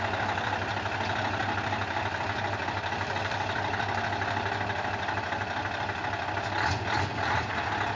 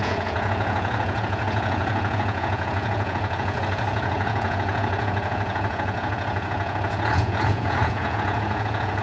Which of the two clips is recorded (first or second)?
first